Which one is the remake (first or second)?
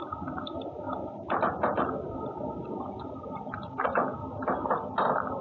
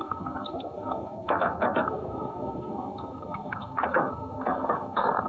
second